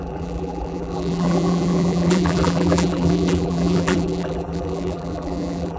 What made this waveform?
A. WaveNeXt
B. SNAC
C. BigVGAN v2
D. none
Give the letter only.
C